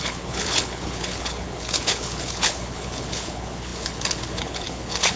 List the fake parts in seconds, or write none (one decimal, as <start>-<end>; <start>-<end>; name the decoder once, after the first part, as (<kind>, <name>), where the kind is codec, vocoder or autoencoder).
0.0-5.2 (codec, HILCodec)